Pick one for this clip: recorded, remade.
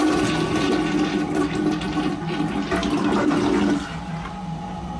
recorded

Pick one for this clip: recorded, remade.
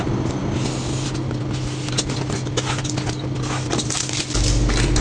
recorded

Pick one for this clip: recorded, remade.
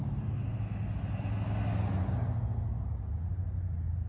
recorded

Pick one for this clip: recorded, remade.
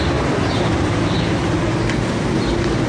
recorded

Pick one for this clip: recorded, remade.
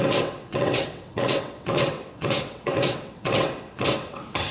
remade